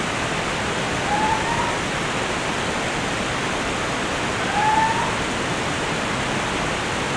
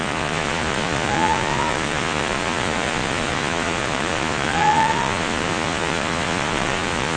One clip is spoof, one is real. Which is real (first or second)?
first